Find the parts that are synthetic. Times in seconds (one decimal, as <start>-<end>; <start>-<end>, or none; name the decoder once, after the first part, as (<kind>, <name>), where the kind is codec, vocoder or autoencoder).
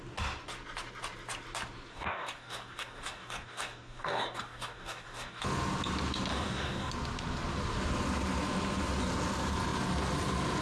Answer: 1.9-5.4 (codec, DAC); 6.3-6.9